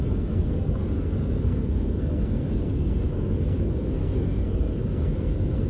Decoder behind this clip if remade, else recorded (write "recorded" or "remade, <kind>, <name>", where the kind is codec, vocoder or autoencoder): remade, codec, SNAC